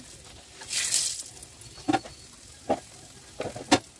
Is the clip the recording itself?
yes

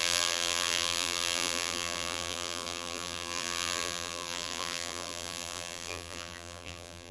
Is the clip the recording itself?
no